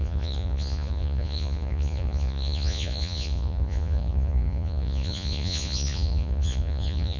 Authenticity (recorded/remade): remade